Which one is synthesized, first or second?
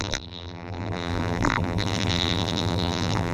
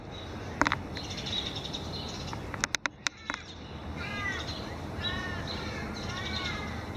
first